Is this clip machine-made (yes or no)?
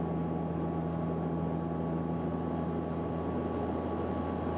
no